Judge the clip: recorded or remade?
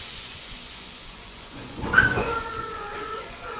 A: remade